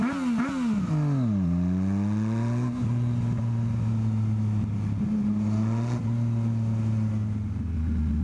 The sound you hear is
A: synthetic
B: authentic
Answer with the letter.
B